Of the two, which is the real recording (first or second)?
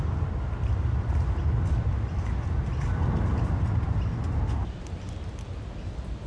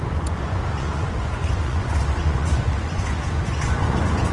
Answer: first